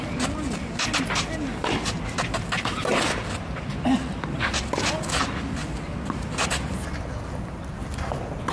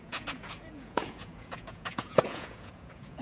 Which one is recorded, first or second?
first